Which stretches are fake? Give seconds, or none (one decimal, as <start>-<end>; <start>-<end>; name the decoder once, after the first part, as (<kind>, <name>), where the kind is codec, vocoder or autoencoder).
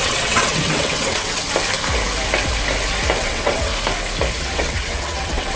0.0-1.4 (vocoder, WaveNeXt); 3.2-3.7; 4.4-5.6